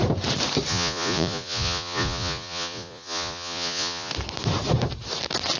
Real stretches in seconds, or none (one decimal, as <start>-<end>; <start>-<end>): 0.0-0.7; 4.1-5.6